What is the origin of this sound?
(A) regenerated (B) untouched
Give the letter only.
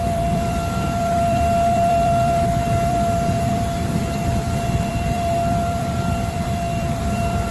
A